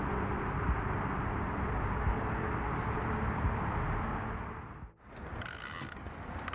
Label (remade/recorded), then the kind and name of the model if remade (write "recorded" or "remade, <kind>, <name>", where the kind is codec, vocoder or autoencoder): recorded